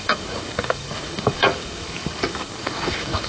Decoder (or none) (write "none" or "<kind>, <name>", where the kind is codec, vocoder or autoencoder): codec, DAC